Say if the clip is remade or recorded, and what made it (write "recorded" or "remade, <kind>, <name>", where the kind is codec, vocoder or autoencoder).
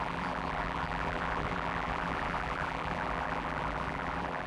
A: remade, vocoder, BigVGAN v2